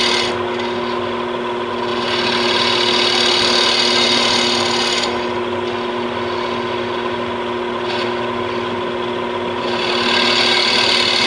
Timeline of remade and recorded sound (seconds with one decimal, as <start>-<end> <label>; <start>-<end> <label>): 0.0-11.3 recorded